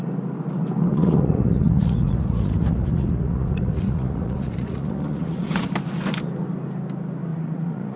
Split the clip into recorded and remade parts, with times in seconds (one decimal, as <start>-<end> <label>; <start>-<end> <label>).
0.0-0.9 recorded; 0.9-5.7 remade; 5.7-7.3 recorded; 7.3-8.0 remade

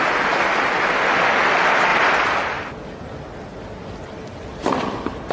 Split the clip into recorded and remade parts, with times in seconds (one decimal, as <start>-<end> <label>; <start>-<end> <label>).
0.0-5.3 recorded

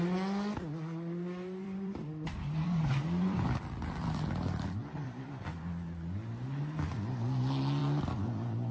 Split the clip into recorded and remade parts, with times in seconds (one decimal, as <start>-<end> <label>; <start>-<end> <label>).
0.0-1.6 recorded; 1.6-5.3 remade; 5.3-8.7 recorded

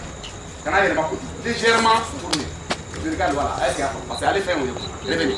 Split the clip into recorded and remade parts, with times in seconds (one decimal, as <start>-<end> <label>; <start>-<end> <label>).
0.0-5.4 recorded

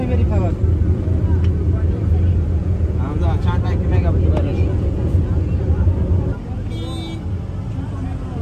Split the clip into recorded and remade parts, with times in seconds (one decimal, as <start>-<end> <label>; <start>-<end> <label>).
0.0-2.6 recorded; 2.6-3.4 remade; 3.4-4.5 recorded; 4.5-5.4 remade; 5.4-8.4 recorded

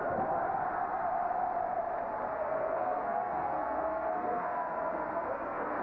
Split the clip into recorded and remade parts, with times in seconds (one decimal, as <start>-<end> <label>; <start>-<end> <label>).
0.0-2.3 recorded; 2.3-5.8 remade

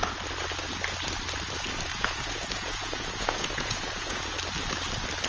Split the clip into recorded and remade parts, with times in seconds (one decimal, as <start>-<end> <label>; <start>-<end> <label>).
0.0-1.9 recorded; 1.9-4.2 remade; 4.2-5.3 recorded

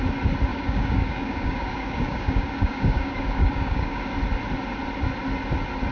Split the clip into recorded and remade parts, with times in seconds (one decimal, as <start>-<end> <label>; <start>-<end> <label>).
0.0-0.5 recorded; 0.5-4.0 remade; 4.0-5.9 recorded